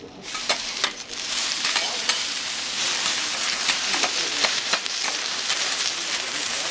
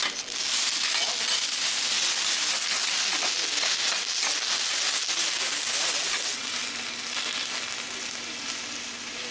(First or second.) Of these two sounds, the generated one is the first